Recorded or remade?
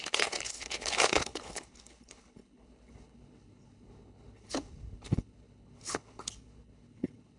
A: remade